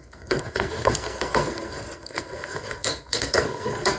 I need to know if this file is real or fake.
fake